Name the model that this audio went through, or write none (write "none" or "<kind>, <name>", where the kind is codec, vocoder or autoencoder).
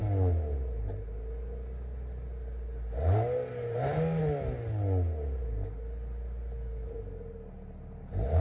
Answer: none